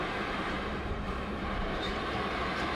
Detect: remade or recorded remade